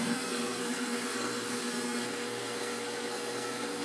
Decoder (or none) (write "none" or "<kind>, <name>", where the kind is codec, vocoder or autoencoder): codec, SNAC